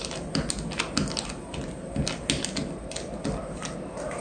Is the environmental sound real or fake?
real